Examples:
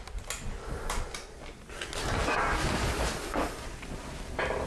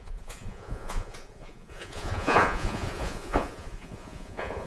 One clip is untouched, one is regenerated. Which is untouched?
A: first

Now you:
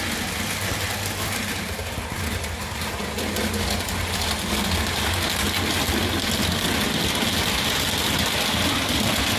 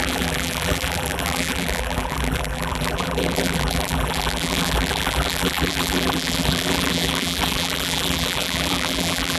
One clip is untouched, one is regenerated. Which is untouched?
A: first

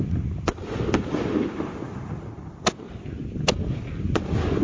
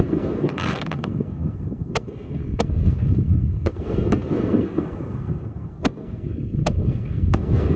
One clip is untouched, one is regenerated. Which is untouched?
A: first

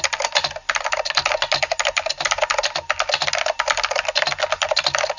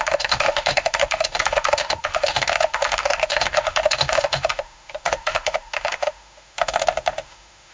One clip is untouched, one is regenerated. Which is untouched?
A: first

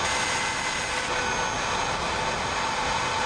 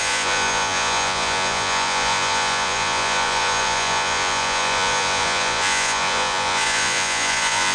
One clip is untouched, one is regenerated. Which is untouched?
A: first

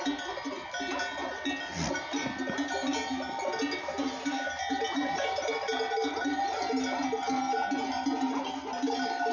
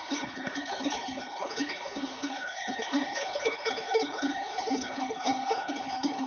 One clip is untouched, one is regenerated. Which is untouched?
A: first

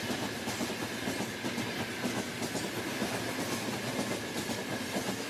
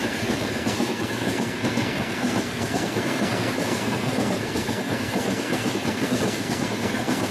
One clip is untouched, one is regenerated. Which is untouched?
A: first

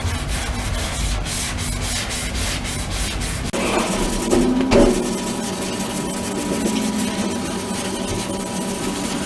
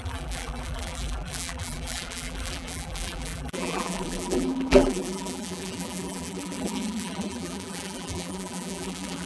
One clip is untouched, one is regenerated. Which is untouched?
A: first